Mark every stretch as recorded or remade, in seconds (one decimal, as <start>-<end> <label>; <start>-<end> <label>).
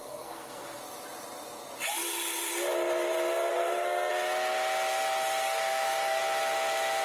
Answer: 0.0-0.8 remade; 0.8-3.5 recorded; 3.5-4.1 remade; 4.1-5.4 recorded; 5.4-6.2 remade; 6.2-7.0 recorded